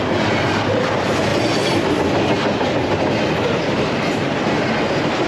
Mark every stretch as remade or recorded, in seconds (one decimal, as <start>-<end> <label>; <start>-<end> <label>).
0.0-1.3 remade; 1.3-4.5 recorded; 4.5-5.3 remade